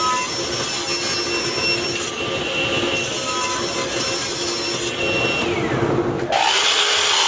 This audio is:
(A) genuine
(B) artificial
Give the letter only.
A